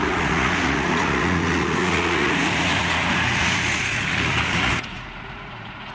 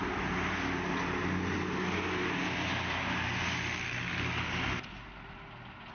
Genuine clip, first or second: second